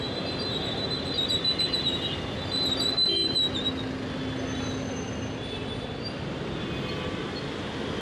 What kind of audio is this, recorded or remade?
recorded